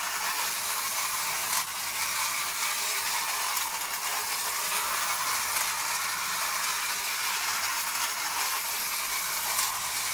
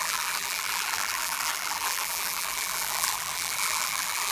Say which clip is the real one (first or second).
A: first